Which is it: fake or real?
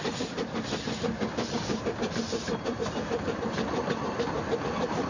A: fake